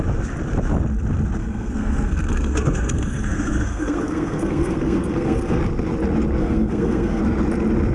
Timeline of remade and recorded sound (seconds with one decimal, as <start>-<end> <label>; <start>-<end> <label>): 0.0-1.4 recorded; 1.4-5.6 remade; 5.6-6.4 recorded; 6.4-7.2 remade; 7.2-7.9 recorded

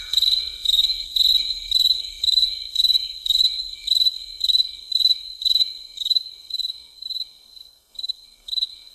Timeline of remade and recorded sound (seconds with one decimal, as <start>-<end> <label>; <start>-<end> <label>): 0.0-8.9 remade

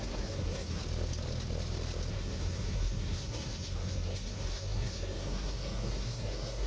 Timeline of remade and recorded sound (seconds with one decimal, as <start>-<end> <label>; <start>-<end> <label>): 0.0-0.8 remade; 0.8-2.1 recorded; 2.1-6.7 remade

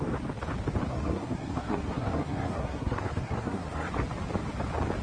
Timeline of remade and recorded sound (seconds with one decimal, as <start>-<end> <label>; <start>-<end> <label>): 0.0-0.9 recorded; 0.9-3.9 remade; 3.9-5.0 recorded

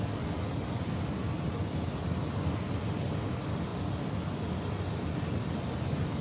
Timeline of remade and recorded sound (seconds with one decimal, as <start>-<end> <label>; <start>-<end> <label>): 0.0-6.2 recorded

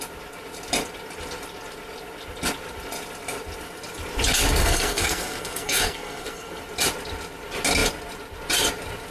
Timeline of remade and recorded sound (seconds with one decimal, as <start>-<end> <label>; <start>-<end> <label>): 0.0-4.6 recorded; 4.6-6.6 remade; 6.6-9.1 recorded

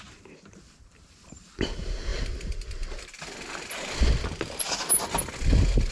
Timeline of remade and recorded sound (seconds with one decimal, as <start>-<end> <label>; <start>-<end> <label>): 0.0-5.9 recorded